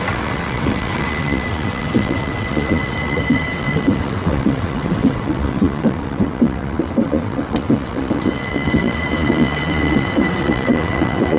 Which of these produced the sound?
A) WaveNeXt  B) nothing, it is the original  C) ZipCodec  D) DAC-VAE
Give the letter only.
A